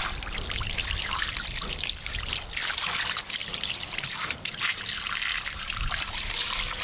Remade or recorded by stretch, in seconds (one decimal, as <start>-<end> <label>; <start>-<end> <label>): 0.0-3.4 recorded; 3.4-4.8 remade; 4.8-5.3 recorded; 5.3-6.8 remade